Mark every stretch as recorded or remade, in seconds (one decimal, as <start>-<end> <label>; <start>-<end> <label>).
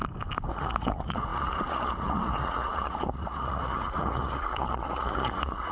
0.0-0.5 recorded; 0.5-5.7 remade